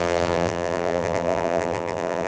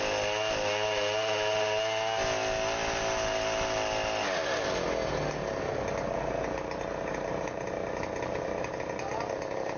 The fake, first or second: first